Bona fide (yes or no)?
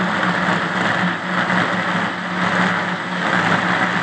yes